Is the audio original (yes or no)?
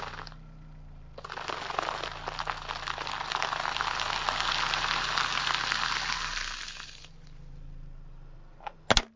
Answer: yes